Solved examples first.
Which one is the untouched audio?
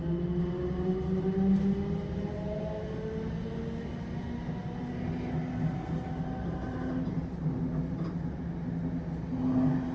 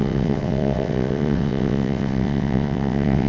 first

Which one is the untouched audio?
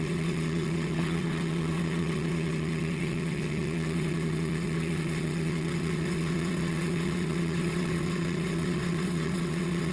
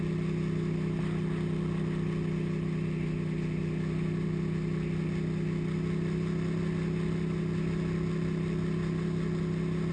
second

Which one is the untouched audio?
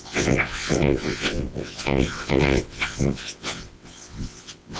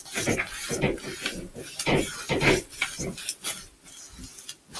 second